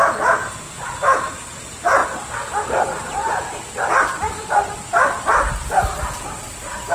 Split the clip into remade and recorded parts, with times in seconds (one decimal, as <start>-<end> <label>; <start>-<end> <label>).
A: 0.0-6.9 recorded